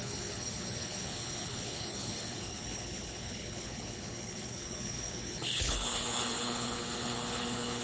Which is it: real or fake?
fake